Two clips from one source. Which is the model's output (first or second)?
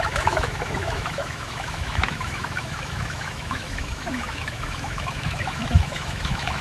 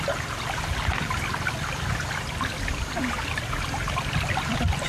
first